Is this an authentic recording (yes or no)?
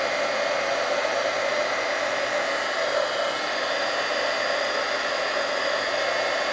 yes